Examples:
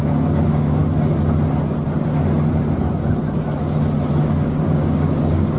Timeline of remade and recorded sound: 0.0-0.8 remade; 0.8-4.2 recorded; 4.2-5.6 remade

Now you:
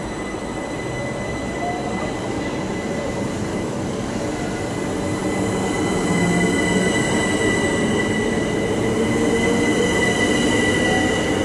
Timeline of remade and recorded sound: 0.0-1.8 recorded; 1.8-2.4 remade; 2.4-3.5 recorded; 3.5-4.1 remade; 4.1-11.4 recorded